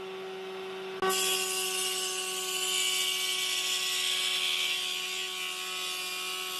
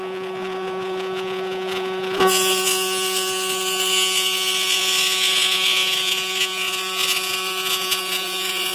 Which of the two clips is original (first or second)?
first